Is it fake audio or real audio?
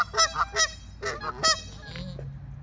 real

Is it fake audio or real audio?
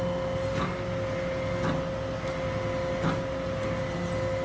real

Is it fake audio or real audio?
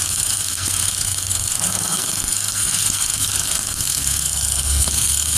fake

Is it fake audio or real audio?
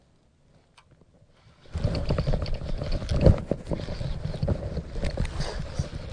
real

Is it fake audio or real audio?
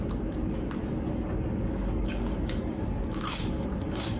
fake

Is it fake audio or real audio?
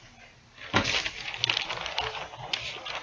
real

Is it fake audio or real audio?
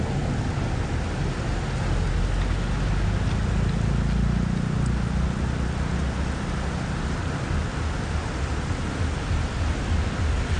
real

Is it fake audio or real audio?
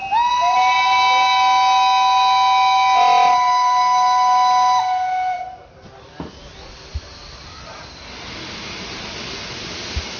real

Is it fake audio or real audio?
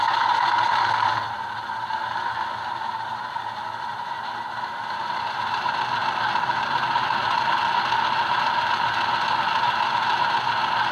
real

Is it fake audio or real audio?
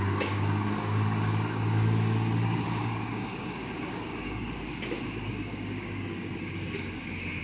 fake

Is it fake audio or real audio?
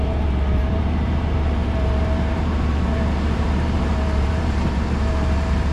fake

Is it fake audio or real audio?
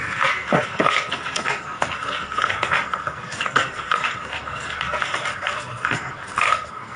fake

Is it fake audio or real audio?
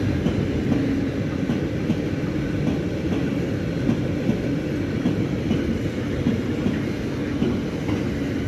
real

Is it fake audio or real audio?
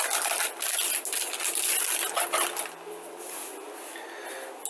real